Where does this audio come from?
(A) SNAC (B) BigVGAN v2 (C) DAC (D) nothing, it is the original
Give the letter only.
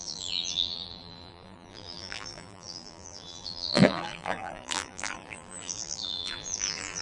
B